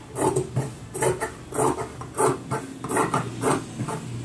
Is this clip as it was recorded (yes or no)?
yes